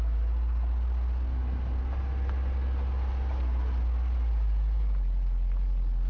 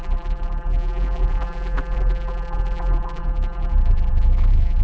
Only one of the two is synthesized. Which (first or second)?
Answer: second